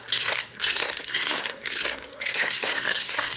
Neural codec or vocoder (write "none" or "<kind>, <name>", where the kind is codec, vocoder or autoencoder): codec, SNAC